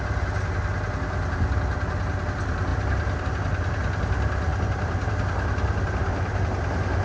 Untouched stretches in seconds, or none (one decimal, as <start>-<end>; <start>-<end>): 0.0-7.0